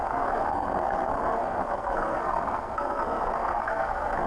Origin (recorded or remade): remade